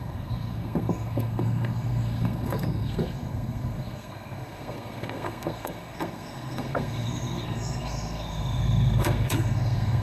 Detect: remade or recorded remade